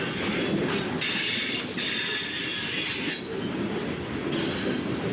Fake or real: real